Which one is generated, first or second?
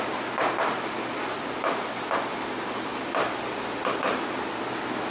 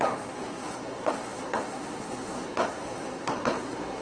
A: second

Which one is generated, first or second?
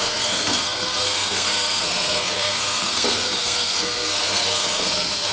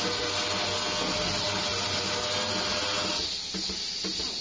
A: first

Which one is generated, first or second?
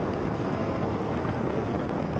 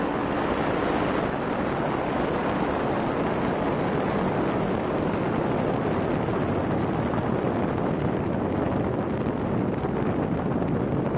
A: first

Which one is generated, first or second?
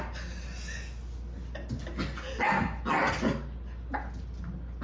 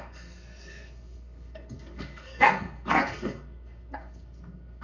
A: second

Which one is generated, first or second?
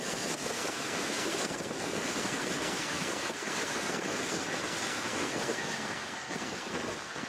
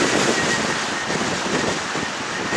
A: first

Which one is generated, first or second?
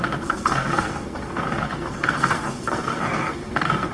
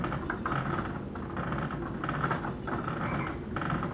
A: first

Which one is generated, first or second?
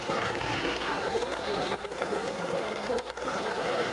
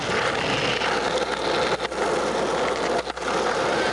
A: first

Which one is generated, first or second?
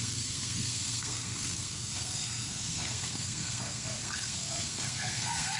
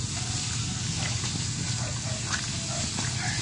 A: first